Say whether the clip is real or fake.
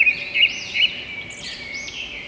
real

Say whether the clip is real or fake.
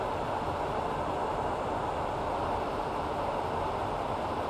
real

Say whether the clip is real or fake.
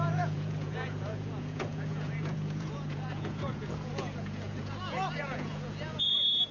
fake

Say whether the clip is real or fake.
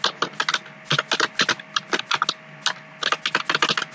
real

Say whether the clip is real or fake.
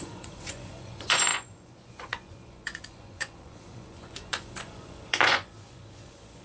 fake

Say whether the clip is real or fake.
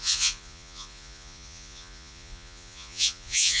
fake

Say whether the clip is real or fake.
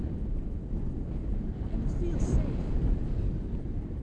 real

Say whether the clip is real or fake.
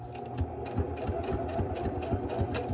real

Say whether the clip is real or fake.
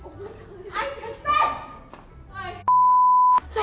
real